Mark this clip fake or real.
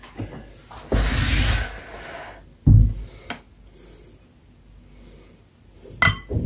real